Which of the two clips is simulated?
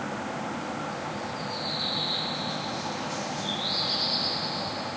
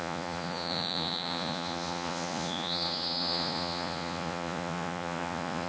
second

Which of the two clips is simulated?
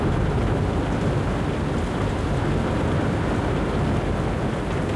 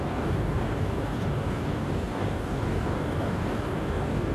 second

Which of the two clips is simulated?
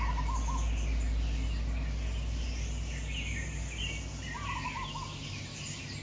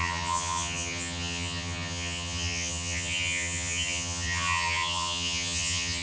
second